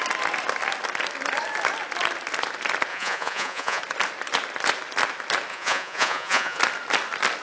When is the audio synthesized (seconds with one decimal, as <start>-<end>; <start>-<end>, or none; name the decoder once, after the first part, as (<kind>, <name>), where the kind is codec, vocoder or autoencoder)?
2.9-3.8 (vocoder, Vocos); 5.5-6.6